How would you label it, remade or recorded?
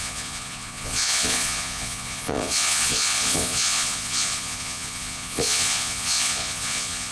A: remade